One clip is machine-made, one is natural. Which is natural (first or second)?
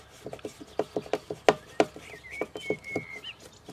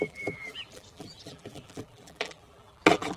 first